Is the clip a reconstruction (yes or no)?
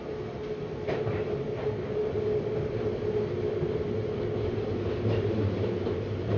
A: no